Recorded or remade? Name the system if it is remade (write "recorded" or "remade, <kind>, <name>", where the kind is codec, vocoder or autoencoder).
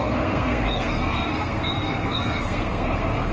remade, codec, SNAC